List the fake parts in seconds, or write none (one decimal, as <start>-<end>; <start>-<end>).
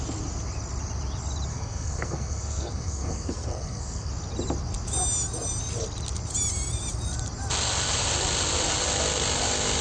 1.5-4.1